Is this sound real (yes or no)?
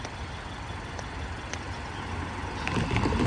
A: yes